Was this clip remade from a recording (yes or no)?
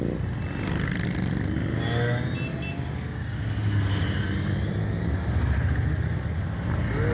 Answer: no